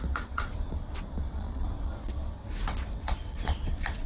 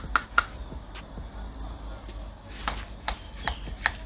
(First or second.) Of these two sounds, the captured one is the second